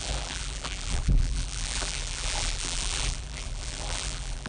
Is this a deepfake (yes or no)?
yes